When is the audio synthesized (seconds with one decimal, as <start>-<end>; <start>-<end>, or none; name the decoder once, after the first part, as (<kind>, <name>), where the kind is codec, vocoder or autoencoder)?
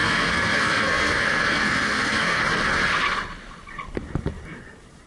0.0-2.4 (codec, SNAC)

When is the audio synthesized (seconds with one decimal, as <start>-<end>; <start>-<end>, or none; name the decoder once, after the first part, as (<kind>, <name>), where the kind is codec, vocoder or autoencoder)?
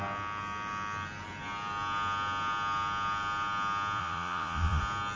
4.0-4.8 (vocoder, Vocos)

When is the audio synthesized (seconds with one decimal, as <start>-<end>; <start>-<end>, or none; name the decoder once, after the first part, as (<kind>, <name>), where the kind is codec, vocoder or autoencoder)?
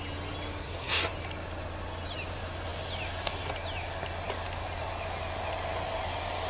0.6-1.1 (codec, SNAC)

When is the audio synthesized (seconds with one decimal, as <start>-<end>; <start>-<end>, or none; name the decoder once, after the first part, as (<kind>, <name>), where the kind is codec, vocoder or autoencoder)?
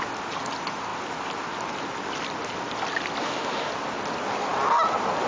3.2-3.7 (autoencoder, DAC-VAE)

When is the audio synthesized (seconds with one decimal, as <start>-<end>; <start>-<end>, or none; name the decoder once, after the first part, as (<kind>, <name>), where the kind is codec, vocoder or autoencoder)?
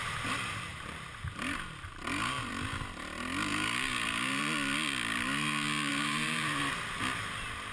0.7-2.5 (vocoder, BigVGAN v2); 3.5-4.4; 5.9-6.7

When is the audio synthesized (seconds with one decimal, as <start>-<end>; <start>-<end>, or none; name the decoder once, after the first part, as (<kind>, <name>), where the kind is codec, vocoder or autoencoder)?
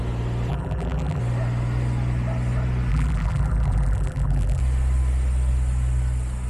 0.5-1.2 (vocoder, BigVGAN v2); 2.9-4.6